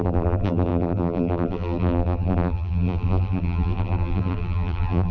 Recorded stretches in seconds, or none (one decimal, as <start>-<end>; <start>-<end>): none